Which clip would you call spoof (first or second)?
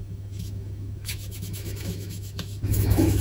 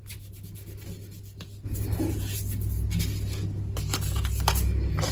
first